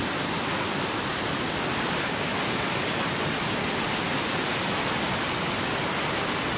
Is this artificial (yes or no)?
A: no